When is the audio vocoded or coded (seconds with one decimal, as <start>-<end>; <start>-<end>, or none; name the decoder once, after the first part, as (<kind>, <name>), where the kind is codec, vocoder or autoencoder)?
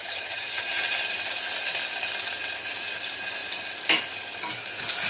0.0-0.8 (vocoder, HiFi-GAN)